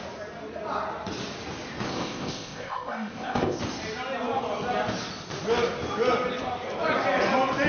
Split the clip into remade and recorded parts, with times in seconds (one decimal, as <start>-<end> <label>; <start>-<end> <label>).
0.0-1.9 recorded; 1.9-3.6 remade; 3.6-7.7 recorded